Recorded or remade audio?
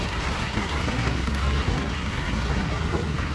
remade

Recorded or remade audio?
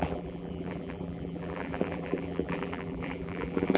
remade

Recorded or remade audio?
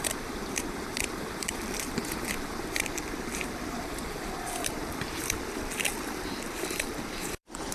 remade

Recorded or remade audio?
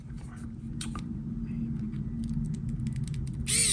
recorded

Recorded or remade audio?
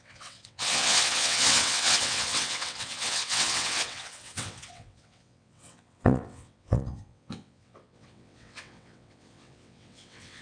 remade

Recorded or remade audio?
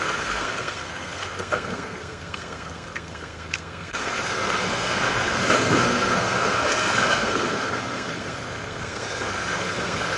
remade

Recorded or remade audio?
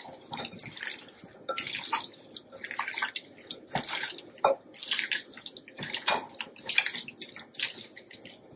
recorded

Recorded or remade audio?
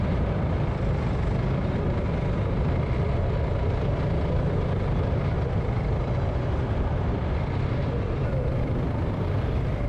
remade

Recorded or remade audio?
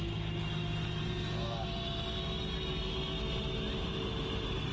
recorded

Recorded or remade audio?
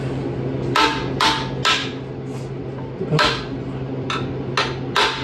recorded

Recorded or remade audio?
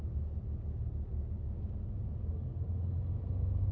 recorded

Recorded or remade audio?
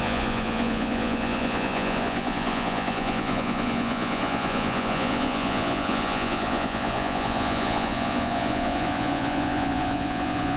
remade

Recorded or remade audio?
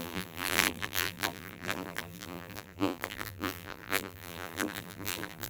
remade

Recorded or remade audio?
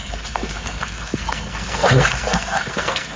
remade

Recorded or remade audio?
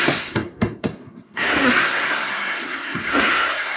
remade